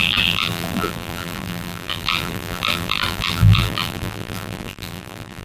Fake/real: fake